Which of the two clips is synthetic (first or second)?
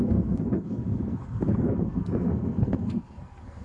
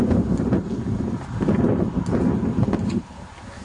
first